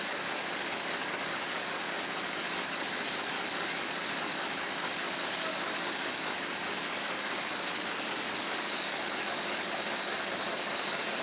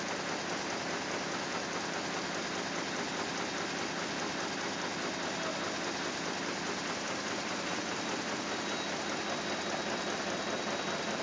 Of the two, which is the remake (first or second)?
first